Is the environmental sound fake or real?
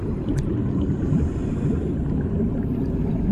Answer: real